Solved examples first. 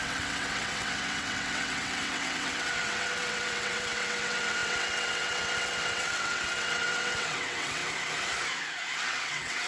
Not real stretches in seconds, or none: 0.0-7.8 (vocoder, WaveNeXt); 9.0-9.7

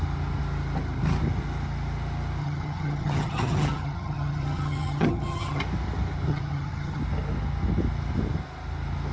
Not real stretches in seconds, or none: 2.4-5.6 (vocoder, HiFi-GAN); 6.3-7.0

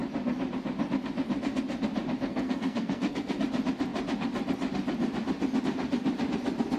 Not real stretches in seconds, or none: 2.3-3.4 (codec, SNAC)

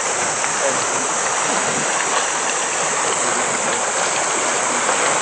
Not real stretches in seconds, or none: none

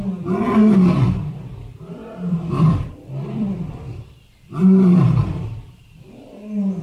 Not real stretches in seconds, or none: 2.0-6.1 (vocoder, BigVGAN v2)

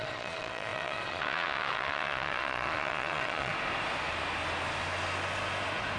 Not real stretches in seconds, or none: 0.0-3.5 (vocoder, Vocos)